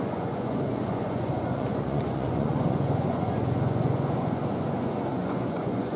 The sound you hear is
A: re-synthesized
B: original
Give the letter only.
A